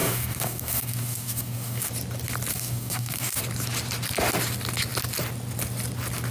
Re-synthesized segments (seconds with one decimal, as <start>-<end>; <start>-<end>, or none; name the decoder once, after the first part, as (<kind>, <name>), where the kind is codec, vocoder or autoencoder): 0.0-1.9 (codec, DAC); 2.5-3.4